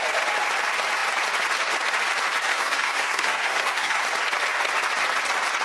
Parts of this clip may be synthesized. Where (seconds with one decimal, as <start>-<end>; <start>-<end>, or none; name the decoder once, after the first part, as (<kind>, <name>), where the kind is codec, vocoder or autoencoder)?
2.5-4.0 (codec, SNAC)